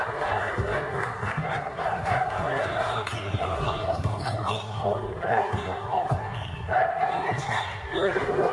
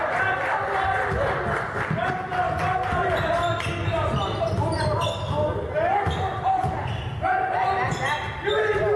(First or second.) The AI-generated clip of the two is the first